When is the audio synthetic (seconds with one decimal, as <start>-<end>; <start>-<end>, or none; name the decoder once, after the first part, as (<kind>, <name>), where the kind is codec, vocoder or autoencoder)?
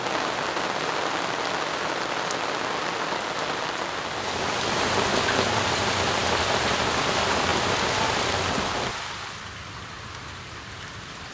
6.2-6.8 (vocoder, BigVGAN v2); 7.5-8.2